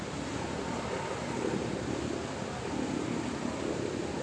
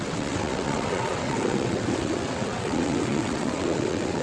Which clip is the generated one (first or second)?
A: second